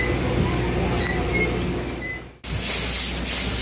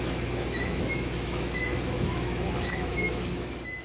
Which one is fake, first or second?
second